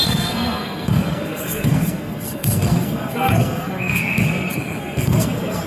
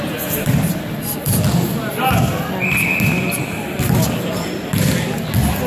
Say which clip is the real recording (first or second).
second